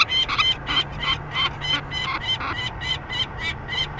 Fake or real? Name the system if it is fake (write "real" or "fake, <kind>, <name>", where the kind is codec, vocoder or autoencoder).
real